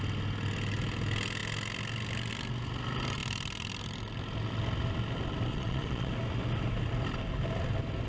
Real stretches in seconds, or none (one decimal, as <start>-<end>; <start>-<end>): 0.0-5.5; 6.1-8.1